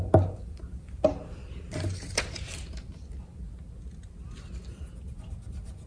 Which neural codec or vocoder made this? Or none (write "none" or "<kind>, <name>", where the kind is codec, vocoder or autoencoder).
none